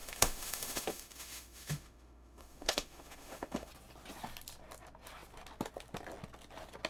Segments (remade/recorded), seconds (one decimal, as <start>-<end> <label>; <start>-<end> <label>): 0.0-3.7 remade; 3.7-6.9 recorded

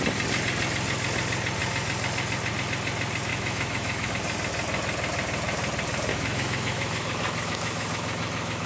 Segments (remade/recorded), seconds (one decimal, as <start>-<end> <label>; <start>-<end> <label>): 0.0-3.3 recorded; 3.3-4.1 remade; 4.1-6.1 recorded; 6.1-8.7 remade

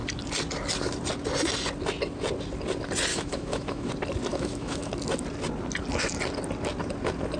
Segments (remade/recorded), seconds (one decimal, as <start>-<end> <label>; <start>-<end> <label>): 0.0-3.1 recorded; 3.1-3.9 remade; 3.9-4.3 recorded; 4.3-4.9 remade; 4.9-7.4 recorded

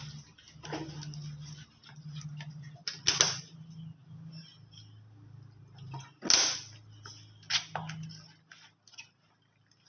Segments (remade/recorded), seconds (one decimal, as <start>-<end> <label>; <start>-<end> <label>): 0.0-9.9 recorded

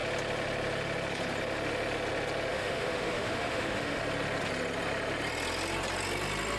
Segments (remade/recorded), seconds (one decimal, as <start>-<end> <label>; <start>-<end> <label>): 0.0-2.5 recorded; 2.5-4.0 remade; 4.0-6.6 recorded

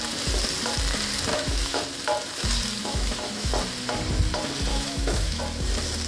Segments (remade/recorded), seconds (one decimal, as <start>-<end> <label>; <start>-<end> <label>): 0.0-1.3 recorded; 1.3-1.8 remade; 1.8-2.8 recorded; 2.8-3.5 remade; 3.5-4.7 recorded; 4.7-5.4 remade; 5.4-6.1 recorded

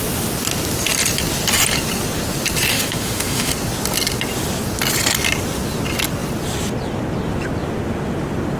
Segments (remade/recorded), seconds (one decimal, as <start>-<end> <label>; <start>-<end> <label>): 0.0-2.7 recorded; 2.7-3.5 remade; 3.5-8.6 recorded

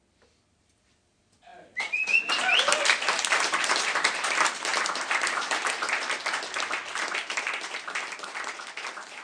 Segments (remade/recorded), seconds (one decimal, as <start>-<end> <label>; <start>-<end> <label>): 0.0-9.2 recorded